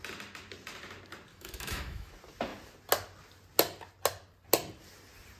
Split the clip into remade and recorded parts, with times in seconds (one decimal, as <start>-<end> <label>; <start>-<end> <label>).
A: 0.0-1.3 recorded; 1.3-2.1 remade; 2.1-5.4 recorded